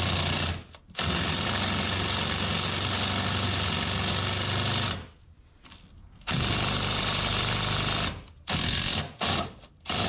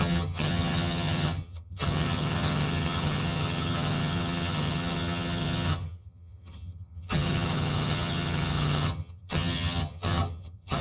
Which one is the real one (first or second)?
first